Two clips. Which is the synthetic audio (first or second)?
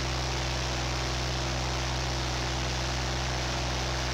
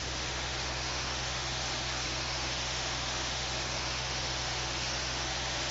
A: second